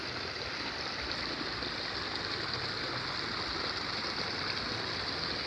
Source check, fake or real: real